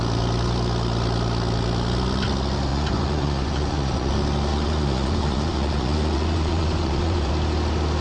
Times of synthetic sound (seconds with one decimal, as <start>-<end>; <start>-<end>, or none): 2.7-4.1; 4.5-7.3